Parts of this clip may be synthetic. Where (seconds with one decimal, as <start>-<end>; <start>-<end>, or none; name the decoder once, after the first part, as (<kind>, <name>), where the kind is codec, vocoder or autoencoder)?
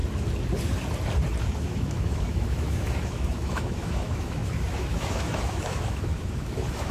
1.4-6.9 (autoencoder, DAC-VAE)